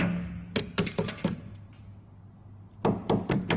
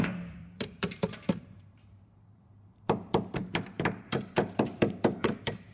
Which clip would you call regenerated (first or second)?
second